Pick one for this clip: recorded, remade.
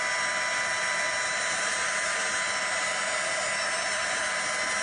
recorded